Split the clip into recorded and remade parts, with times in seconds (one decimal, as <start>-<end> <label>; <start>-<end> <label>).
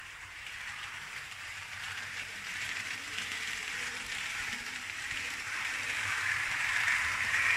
0.0-3.0 remade; 3.0-3.6 recorded; 3.6-6.8 remade; 6.8-7.6 recorded